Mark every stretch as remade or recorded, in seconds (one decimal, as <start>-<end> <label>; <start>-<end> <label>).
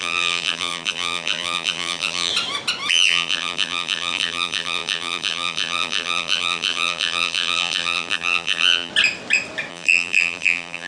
0.0-2.3 remade; 2.3-2.9 recorded; 2.9-8.9 remade; 8.9-9.7 recorded; 9.7-10.9 remade